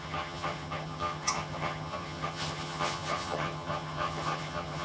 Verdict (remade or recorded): remade